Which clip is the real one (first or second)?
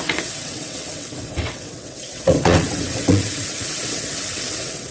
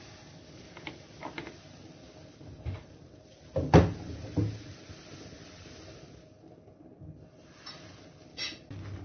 second